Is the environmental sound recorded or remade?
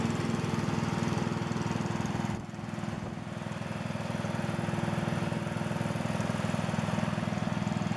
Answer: recorded